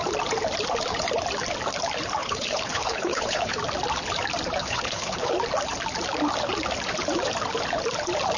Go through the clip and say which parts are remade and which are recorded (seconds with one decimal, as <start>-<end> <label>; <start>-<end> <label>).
0.0-2.2 recorded; 2.2-3.5 remade; 3.5-4.6 recorded; 4.6-5.3 remade; 5.3-8.4 recorded